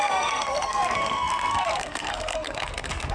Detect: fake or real fake